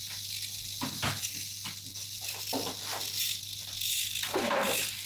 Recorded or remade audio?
recorded